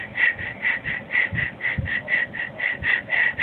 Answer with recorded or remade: recorded